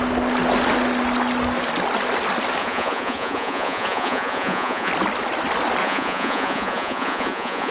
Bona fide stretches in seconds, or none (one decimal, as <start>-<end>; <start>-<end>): 0.0-2.6; 4.9-5.8